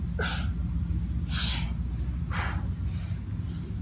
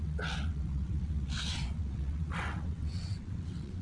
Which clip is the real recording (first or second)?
first